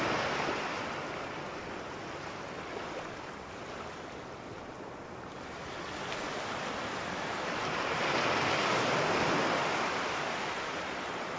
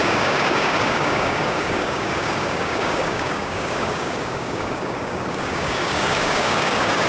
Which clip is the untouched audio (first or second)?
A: first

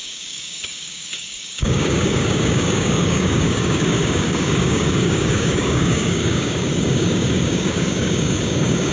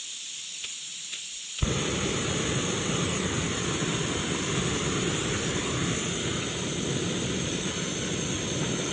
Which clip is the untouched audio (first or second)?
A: second